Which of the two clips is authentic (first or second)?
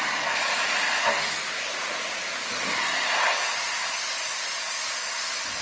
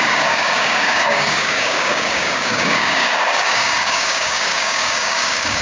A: first